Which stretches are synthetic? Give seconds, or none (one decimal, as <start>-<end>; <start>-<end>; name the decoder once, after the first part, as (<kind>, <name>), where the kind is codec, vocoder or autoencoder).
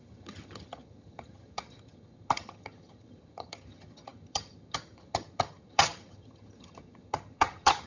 0.0-7.9 (vocoder, HiFi-GAN)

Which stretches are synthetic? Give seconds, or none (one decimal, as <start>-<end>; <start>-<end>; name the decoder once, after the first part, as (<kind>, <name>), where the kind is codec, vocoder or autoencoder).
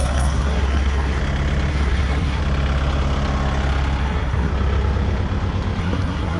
0.0-1.2 (codec, SNAC); 1.7-2.4; 4.0-4.5; 5.8-6.4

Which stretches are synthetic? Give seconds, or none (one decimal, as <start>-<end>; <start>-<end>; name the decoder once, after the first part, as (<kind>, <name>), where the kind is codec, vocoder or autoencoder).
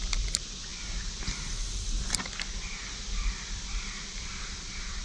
none